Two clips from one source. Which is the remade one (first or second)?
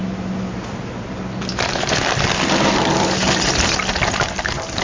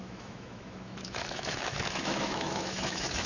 second